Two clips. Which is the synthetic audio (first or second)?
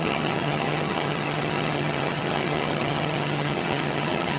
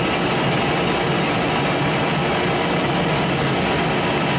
first